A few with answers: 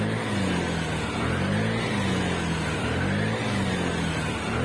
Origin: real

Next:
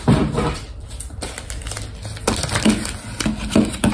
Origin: real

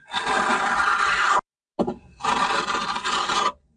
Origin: real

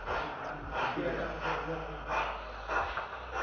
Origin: real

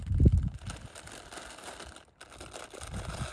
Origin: real